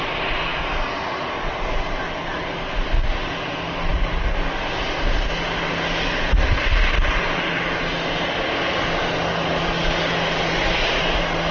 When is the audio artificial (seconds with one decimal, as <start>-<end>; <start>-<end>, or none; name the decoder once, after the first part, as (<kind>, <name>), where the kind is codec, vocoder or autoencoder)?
none